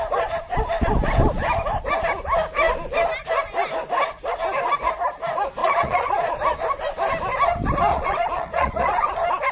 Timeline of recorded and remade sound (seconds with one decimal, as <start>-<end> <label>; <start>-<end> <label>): 0.0-5.6 recorded; 5.6-6.3 remade; 6.3-7.9 recorded; 7.9-9.1 remade; 9.1-9.5 recorded

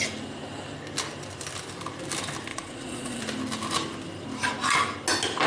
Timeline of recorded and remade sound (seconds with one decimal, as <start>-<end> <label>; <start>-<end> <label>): 0.0-2.5 recorded; 2.5-3.2 remade; 3.2-5.5 recorded

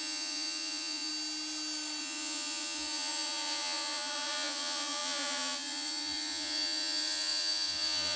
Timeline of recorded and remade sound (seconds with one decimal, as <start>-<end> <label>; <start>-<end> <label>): 0.0-1.1 remade; 1.1-2.0 recorded; 2.0-8.2 remade

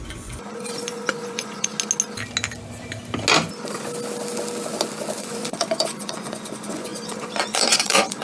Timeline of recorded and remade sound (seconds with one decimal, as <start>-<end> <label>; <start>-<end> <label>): 0.0-1.7 remade; 1.7-5.2 recorded; 5.2-8.2 remade